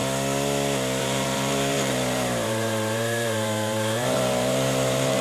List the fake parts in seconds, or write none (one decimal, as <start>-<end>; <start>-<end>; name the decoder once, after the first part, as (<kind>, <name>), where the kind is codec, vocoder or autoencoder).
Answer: 1.0-5.2 (vocoder, BigVGAN v2)